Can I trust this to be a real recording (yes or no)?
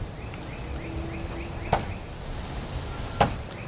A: yes